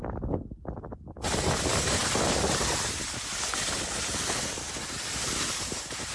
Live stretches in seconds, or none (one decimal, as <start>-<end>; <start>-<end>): 0.0-6.1